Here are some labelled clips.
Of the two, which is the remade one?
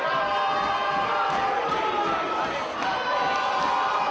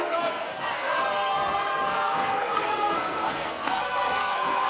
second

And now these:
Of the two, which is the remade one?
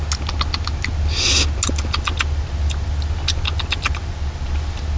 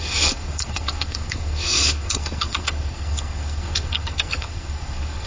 second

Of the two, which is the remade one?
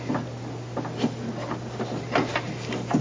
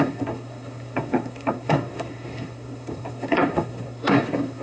second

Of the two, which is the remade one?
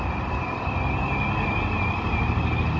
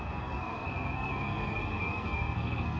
second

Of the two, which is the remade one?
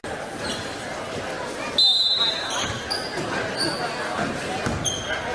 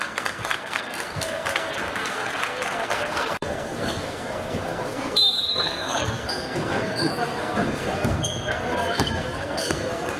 second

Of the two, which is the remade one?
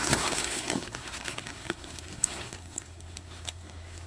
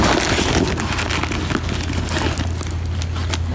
first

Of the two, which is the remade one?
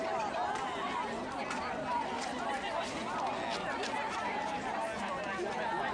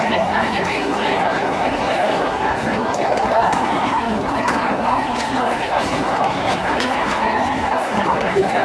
second